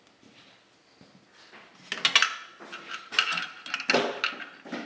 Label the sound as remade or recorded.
recorded